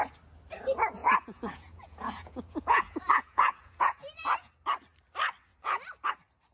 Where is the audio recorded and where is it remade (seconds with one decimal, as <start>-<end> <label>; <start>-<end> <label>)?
0.0-1.0 recorded; 1.0-4.5 remade; 4.5-6.5 recorded